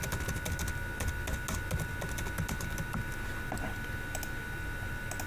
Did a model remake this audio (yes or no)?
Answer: no